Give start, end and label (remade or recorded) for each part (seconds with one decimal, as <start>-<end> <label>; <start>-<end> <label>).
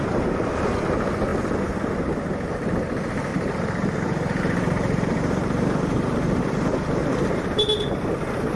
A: 0.0-3.3 recorded; 3.3-6.6 remade; 6.6-7.0 recorded; 7.0-7.6 remade; 7.6-8.6 recorded